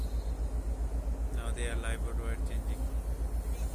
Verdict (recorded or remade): recorded